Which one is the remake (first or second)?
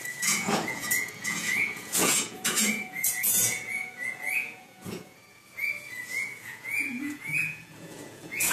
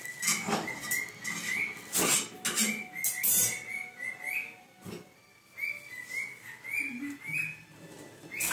first